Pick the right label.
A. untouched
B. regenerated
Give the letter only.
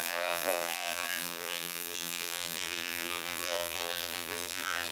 B